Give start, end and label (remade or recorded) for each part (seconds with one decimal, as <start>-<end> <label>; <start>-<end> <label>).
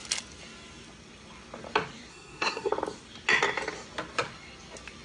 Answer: 0.0-2.1 recorded; 2.1-2.7 remade; 2.7-5.0 recorded